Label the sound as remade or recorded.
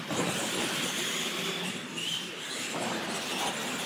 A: recorded